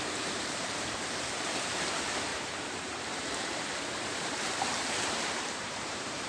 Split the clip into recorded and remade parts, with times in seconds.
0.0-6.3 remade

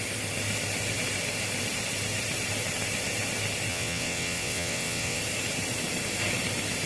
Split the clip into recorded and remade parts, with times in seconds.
0.0-3.7 recorded; 3.7-5.2 remade; 5.2-6.9 recorded